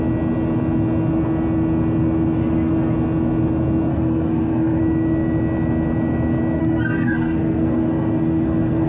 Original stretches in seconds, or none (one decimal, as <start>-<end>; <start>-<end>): 0.0-3.9; 4.8-6.6